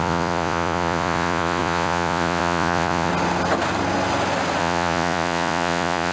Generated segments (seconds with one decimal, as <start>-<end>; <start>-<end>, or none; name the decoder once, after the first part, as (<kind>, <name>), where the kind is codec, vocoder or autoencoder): 0.0-3.1 (vocoder, Vocos); 4.6-6.1